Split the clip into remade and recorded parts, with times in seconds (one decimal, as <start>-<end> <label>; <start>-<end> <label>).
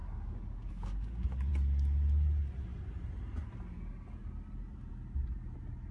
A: 0.0-1.5 remade; 1.5-5.9 recorded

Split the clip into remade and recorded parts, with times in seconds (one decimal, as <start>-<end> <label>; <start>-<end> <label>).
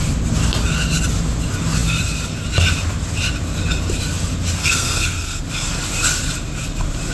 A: 0.0-4.6 recorded; 4.6-5.4 remade; 5.4-7.1 recorded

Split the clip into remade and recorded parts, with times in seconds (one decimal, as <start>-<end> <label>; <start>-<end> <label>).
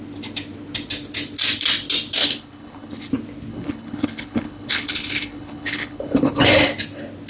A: 0.0-2.2 recorded; 2.2-3.1 remade; 3.1-3.5 recorded; 3.5-6.3 remade; 6.3-7.3 recorded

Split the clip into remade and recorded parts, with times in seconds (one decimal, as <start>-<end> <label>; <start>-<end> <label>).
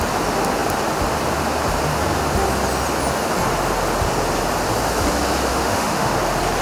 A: 0.0-5.5 recorded; 5.5-6.1 remade; 6.1-6.6 recorded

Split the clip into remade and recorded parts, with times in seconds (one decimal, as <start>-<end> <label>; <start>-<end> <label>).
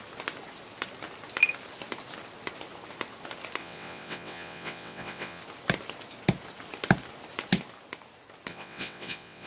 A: 0.0-3.6 recorded; 3.6-5.4 remade; 5.4-8.5 recorded; 8.5-9.5 remade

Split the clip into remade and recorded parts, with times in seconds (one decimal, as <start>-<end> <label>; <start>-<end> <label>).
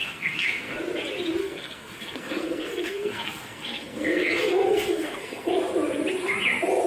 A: 0.0-0.8 remade; 0.8-1.4 recorded; 1.4-5.5 remade; 5.5-6.9 recorded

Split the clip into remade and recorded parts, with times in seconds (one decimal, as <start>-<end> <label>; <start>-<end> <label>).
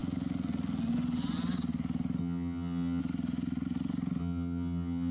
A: 0.0-2.2 recorded; 2.2-3.0 remade; 3.0-4.2 recorded; 4.2-5.1 remade